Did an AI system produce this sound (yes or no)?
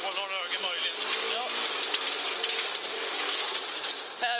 no